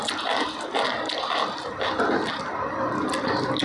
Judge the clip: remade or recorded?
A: recorded